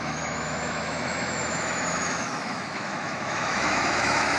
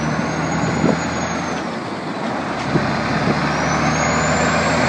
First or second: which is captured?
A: second